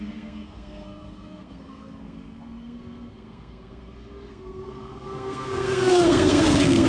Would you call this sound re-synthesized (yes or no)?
yes